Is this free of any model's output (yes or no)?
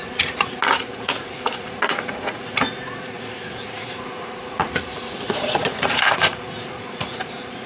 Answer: no